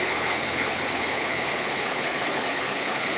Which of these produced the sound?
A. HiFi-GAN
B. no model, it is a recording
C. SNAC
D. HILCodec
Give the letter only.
D